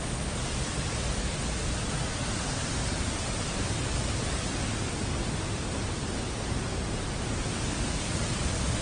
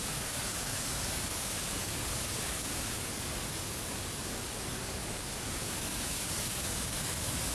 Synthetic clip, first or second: second